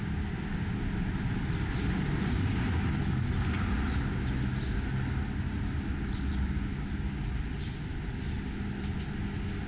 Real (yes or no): yes